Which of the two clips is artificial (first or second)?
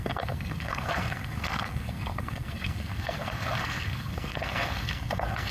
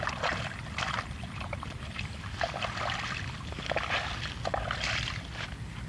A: first